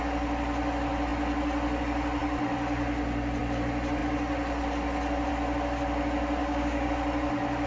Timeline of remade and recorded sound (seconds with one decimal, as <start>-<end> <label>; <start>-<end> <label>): 0.0-6.4 recorded; 6.4-6.9 remade; 6.9-7.7 recorded